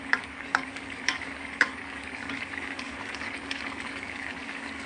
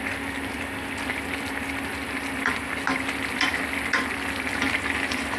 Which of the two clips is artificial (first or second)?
first